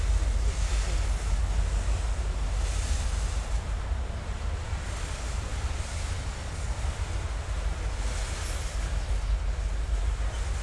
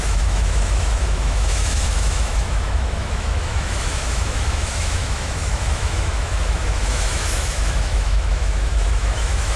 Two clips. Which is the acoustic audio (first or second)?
first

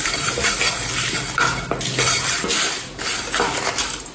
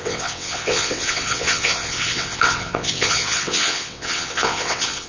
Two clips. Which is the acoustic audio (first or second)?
first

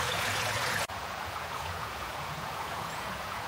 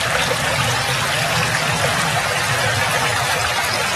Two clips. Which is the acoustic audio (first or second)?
second